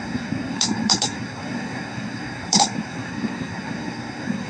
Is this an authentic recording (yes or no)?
no